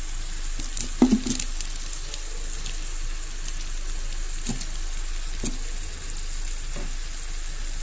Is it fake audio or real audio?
real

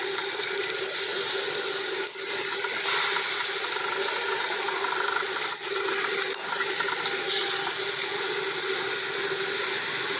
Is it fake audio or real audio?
real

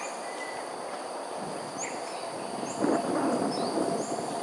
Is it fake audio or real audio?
real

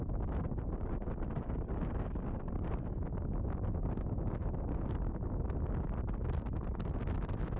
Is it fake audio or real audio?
real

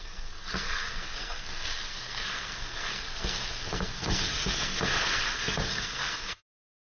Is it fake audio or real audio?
fake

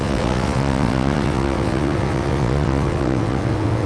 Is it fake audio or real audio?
fake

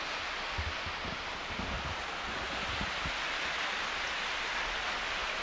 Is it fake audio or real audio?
real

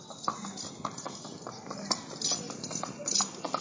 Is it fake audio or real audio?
real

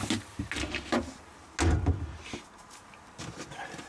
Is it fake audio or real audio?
real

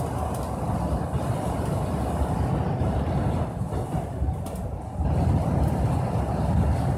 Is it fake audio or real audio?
real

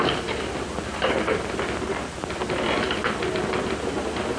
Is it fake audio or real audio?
real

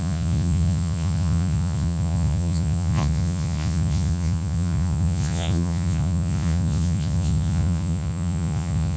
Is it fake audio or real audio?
fake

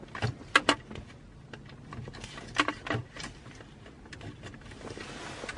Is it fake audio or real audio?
real